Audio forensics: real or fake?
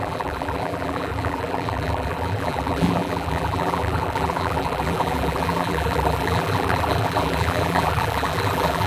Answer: fake